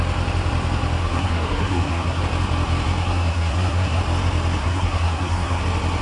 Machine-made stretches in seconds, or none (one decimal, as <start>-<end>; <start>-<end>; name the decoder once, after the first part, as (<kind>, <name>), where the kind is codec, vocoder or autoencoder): 1.0-2.2 (codec, SNAC); 3.0-4.0; 4.6-5.6